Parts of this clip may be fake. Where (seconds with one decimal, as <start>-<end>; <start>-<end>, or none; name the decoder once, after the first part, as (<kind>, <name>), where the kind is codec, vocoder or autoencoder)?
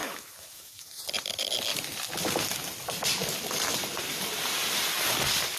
0.0-1.0 (autoencoder, DAC-VAE)